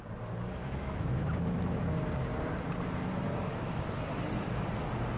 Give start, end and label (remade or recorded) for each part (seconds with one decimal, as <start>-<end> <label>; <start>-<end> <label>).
0.0-0.6 recorded; 0.6-1.8 remade; 1.8-5.2 recorded